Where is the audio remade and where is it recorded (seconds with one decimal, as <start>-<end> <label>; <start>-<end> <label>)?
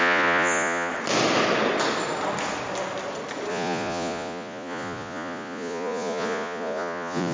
0.0-0.9 remade; 0.9-3.5 recorded; 3.5-7.3 remade